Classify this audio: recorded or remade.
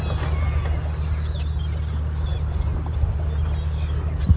recorded